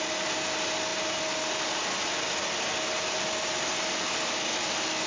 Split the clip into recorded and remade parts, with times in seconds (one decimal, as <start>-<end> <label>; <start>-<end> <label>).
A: 0.0-5.1 recorded